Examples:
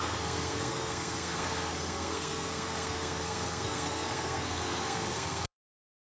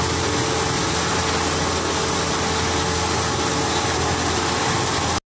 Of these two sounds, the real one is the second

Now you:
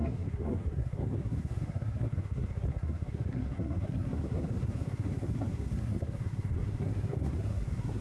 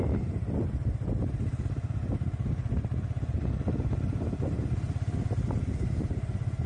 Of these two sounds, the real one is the second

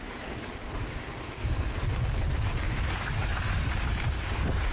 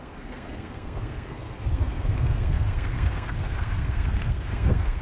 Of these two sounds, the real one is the first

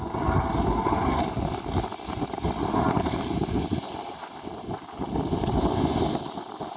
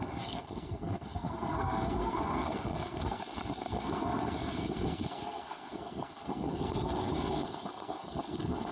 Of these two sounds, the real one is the first